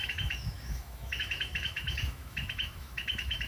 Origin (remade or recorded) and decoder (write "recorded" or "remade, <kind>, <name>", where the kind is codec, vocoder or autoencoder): remade, autoencoder, DAC-VAE